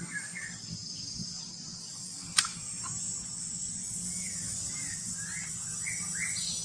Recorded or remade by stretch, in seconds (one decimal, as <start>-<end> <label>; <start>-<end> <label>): 0.0-6.6 recorded